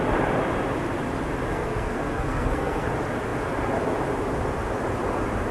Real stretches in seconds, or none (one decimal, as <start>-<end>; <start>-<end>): 0.0-1.5; 2.9-5.5